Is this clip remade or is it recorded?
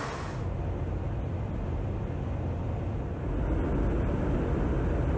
recorded